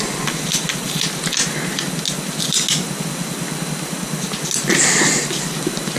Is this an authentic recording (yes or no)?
yes